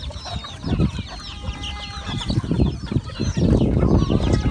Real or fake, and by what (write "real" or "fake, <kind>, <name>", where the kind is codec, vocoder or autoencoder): real